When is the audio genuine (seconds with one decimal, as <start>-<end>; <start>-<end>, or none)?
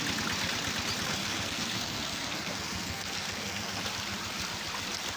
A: 0.0-1.2; 3.8-5.2